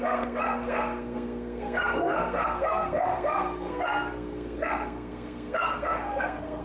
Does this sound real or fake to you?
fake